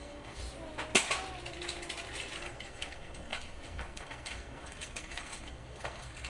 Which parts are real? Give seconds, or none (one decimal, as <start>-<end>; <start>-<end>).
0.4-2.4